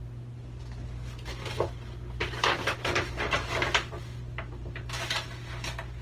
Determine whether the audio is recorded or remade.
recorded